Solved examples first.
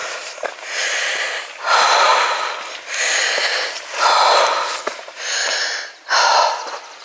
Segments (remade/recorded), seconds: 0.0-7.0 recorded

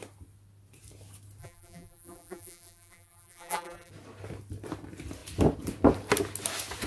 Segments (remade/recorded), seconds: 0.0-1.4 recorded; 1.4-3.9 remade; 3.9-6.9 recorded

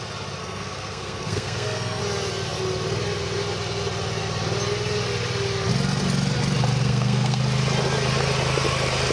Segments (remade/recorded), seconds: 0.0-0.4 recorded; 0.4-2.0 remade; 2.0-6.8 recorded; 6.8-7.4 remade; 7.4-9.1 recorded